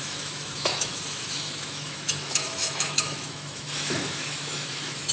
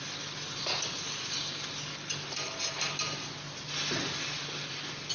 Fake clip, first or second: first